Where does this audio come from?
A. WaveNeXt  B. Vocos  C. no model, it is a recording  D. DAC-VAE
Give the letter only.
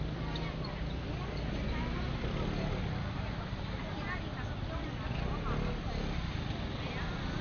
C